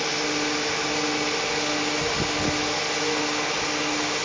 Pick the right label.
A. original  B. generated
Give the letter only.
A